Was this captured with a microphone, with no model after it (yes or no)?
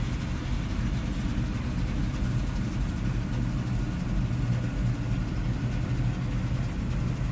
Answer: yes